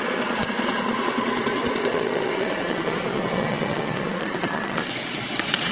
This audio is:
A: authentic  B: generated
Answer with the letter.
B